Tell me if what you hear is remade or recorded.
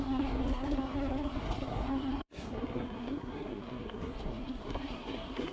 remade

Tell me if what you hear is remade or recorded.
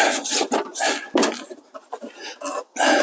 recorded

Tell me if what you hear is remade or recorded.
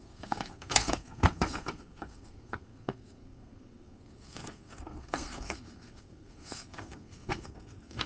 remade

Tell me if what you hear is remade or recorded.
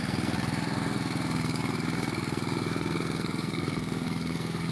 remade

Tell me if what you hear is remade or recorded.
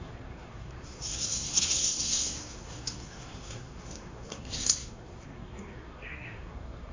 remade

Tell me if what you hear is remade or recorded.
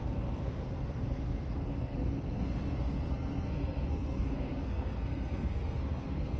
remade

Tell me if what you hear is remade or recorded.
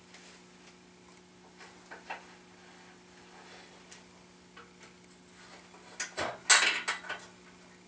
recorded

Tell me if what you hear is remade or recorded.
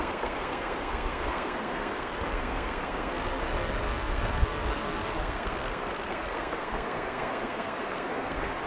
remade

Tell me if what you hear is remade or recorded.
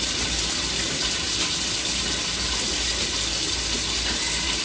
recorded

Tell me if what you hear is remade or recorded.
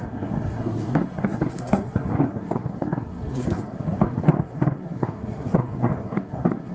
remade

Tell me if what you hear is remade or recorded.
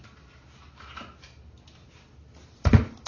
recorded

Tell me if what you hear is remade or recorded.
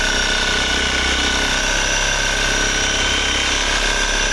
recorded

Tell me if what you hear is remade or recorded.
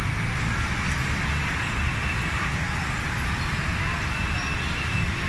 recorded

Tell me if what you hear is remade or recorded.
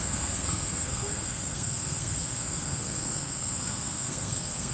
remade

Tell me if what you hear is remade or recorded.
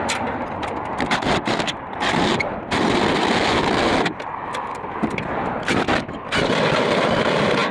recorded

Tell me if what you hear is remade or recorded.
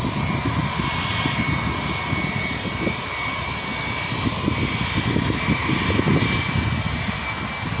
recorded